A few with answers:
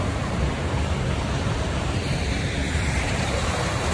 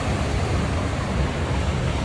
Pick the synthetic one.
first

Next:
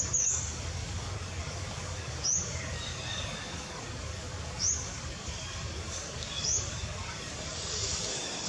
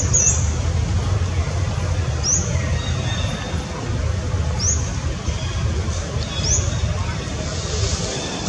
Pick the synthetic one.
first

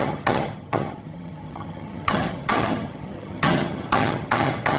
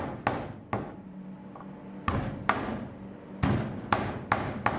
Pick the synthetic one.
first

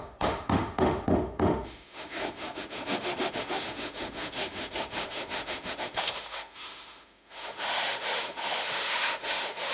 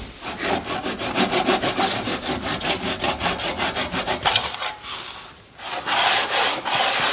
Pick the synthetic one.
first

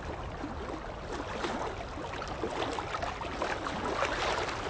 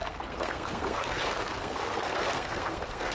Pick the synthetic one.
second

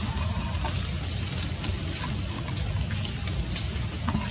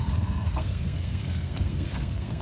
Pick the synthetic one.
second